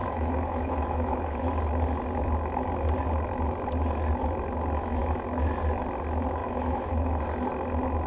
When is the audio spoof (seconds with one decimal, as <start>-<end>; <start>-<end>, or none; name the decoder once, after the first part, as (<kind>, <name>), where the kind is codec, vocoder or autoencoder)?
0.0-1.5 (autoencoder, DAC-VAE); 6.4-7.2